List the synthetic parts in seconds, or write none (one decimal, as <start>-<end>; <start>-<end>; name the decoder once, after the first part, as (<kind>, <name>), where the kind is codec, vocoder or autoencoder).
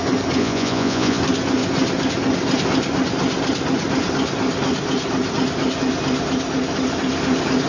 0.4-1.2 (vocoder, Vocos)